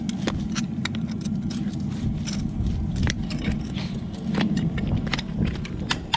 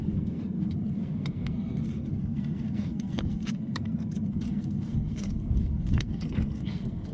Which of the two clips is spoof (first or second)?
second